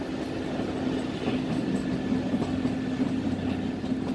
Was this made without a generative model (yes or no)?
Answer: yes